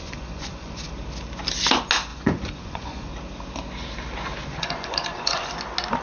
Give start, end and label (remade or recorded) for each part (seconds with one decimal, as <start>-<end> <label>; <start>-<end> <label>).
0.0-0.9 remade; 0.9-2.1 recorded; 2.1-3.1 remade; 3.1-4.4 recorded; 4.4-5.5 remade; 5.5-6.0 recorded